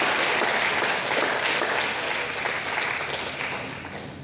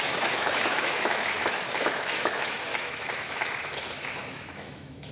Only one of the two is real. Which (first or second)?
first